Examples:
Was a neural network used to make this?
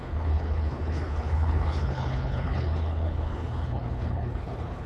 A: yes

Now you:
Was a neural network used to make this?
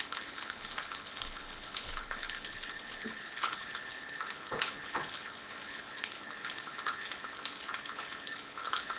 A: yes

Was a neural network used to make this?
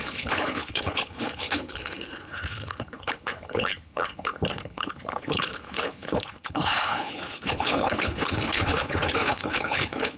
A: yes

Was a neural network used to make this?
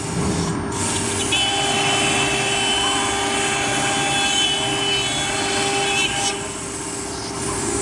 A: no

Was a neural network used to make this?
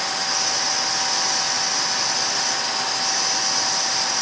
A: no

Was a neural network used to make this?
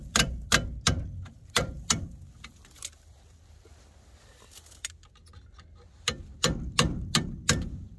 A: no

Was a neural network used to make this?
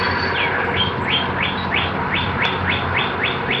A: no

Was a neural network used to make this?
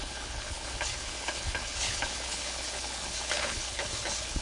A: yes